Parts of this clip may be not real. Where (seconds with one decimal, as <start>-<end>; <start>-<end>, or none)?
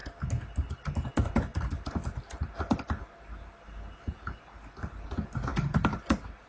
none